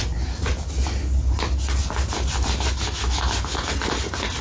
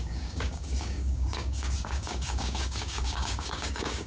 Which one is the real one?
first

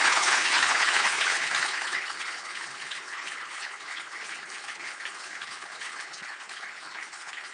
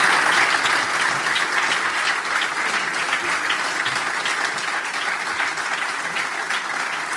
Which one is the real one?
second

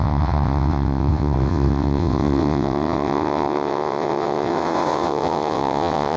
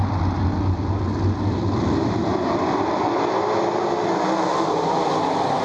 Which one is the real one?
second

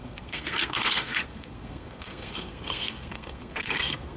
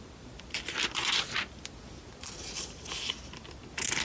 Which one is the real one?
second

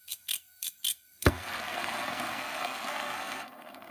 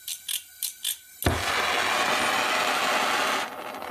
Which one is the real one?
second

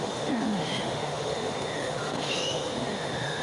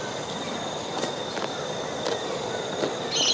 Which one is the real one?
second